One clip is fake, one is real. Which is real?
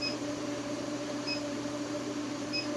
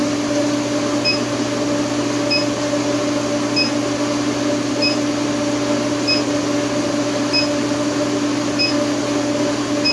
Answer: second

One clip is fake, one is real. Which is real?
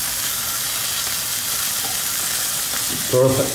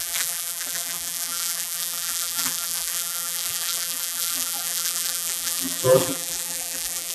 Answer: first